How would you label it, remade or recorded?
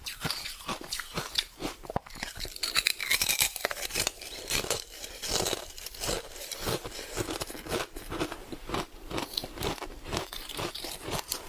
remade